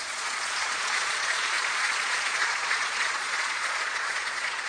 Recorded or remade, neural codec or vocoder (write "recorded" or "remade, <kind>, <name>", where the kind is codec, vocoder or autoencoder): remade, vocoder, Vocos